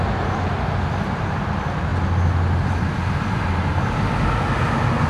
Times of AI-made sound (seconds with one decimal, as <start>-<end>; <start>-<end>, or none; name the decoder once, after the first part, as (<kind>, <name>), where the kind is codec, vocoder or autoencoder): none